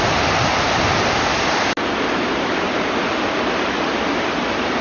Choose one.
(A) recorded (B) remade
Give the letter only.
A